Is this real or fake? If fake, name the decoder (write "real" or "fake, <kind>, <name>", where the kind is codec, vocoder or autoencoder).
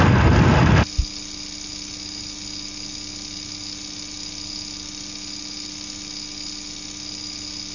real